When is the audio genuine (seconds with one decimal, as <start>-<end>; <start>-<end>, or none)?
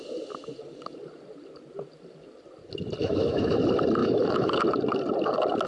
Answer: 0.0-3.0; 3.6-4.0; 4.6-5.7